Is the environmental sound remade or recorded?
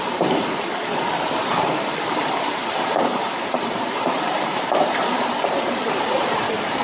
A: remade